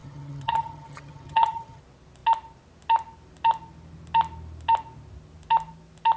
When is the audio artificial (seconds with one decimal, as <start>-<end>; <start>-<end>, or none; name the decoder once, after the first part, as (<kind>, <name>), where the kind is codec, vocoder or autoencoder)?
0.0-1.8 (vocoder, HiFi-GAN)